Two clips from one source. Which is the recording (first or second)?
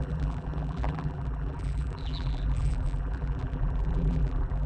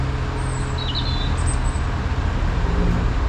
second